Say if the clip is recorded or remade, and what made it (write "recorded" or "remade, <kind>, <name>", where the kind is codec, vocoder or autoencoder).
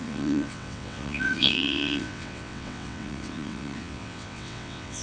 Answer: remade, vocoder, WaveNeXt